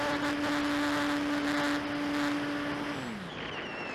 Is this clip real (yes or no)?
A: yes